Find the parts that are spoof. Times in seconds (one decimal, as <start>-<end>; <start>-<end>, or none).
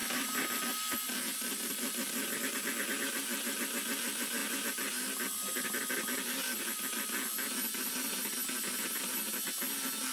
0.0-0.6